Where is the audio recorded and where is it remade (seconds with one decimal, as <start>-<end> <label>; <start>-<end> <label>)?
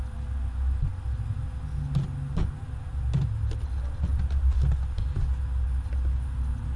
0.0-0.9 recorded; 0.9-1.5 remade; 1.5-4.1 recorded; 4.1-4.7 remade; 4.7-6.8 recorded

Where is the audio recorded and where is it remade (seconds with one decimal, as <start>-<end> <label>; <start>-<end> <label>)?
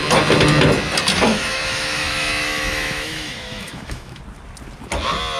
0.0-1.3 recorded; 1.3-4.2 remade; 4.2-5.4 recorded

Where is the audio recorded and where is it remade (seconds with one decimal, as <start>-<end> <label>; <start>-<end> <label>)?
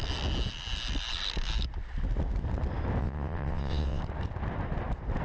0.0-3.0 recorded; 3.0-4.0 remade; 4.0-5.2 recorded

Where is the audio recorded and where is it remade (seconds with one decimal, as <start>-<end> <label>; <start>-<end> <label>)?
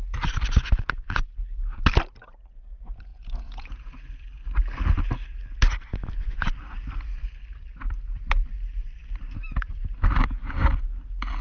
0.0-3.1 recorded; 3.1-3.9 remade; 3.9-11.4 recorded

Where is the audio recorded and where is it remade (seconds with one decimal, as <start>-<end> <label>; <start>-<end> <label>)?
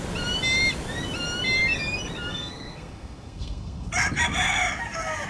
0.0-2.3 recorded; 2.3-3.9 remade; 3.9-5.3 recorded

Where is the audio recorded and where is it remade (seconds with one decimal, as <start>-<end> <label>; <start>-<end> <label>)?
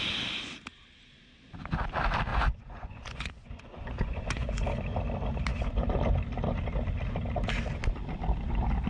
0.0-2.3 recorded; 2.3-4.6 remade; 4.6-5.5 recorded; 5.5-6.0 remade; 6.0-8.9 recorded